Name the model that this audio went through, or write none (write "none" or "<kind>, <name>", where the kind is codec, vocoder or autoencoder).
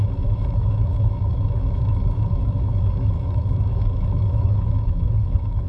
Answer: autoencoder, DAC-VAE